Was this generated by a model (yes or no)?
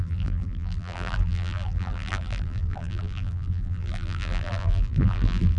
yes